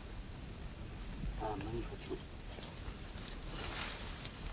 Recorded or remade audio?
recorded